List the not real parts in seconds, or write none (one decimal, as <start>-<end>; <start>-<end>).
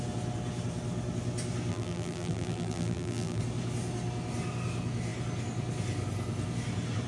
1.7-3.4